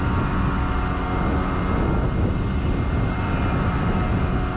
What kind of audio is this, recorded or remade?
recorded